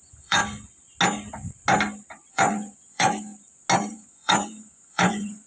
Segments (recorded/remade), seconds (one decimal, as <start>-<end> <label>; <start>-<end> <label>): 0.0-0.4 remade; 0.4-2.3 recorded; 2.3-3.3 remade; 3.3-3.9 recorded; 3.9-5.5 remade